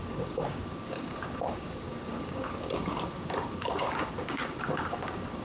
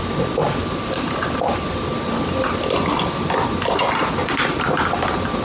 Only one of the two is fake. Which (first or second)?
first